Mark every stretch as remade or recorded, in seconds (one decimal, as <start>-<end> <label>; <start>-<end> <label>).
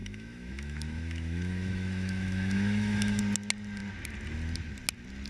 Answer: 0.0-3.2 remade; 3.2-5.3 recorded